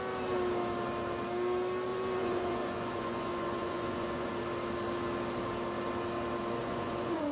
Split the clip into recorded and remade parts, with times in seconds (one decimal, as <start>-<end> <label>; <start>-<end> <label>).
0.0-1.9 recorded; 1.9-4.3 remade; 4.3-6.6 recorded; 6.6-7.3 remade

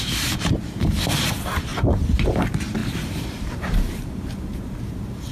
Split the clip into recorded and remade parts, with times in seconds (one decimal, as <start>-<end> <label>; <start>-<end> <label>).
0.0-1.7 remade; 1.7-2.4 recorded; 2.4-5.3 remade

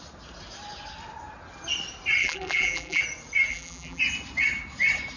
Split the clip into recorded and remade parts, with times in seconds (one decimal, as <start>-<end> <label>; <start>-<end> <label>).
0.0-2.2 recorded; 2.2-3.0 remade; 3.0-3.5 recorded; 3.5-4.0 remade; 4.0-5.2 recorded

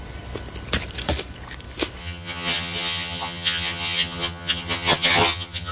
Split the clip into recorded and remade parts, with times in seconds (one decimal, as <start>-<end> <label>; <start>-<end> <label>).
0.0-2.0 recorded; 2.0-5.7 remade

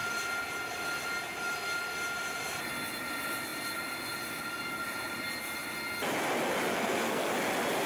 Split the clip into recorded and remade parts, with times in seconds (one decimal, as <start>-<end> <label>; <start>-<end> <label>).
0.0-6.7 recorded; 6.7-7.3 remade; 7.3-7.9 recorded

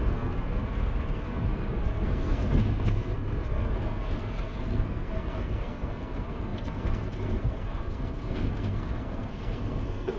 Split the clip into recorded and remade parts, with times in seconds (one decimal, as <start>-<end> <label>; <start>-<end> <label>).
0.0-10.2 remade

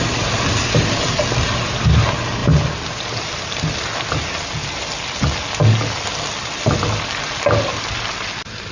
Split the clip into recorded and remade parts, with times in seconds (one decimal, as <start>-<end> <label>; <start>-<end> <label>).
0.0-8.7 recorded